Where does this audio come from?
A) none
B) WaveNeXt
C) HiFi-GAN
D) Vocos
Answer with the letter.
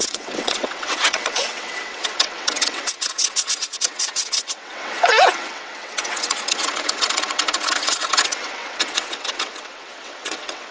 B